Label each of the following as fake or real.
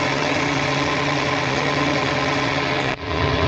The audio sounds fake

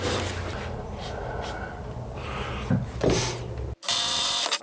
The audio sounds real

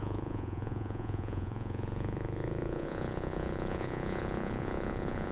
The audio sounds fake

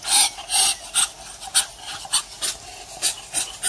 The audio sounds real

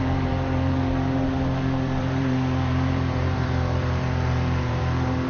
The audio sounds fake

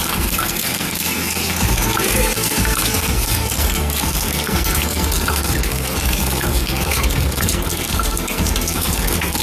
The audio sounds fake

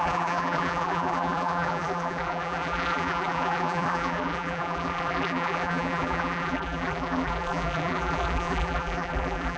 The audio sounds fake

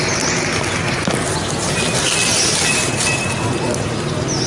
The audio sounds real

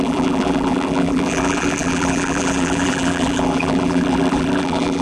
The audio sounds fake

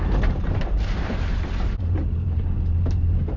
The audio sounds fake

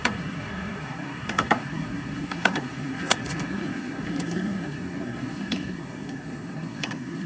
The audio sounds fake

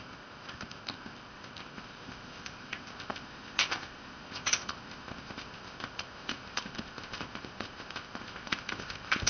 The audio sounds fake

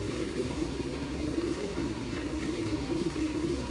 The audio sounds fake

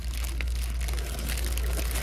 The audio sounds real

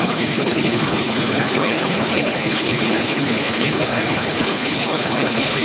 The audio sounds fake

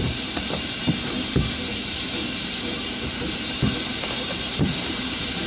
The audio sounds fake